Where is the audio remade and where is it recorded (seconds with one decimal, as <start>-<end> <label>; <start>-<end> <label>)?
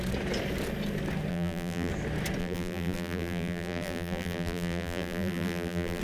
0.0-1.3 recorded; 1.3-1.9 remade; 1.9-2.4 recorded; 2.4-6.0 remade